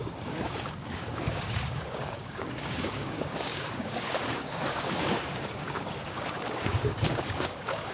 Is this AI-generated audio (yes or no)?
yes